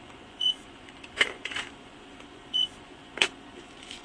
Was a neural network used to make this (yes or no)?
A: yes